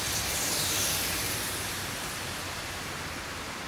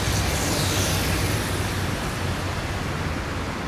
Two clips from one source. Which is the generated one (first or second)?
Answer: first